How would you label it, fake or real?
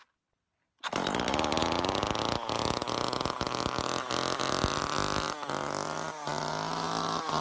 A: real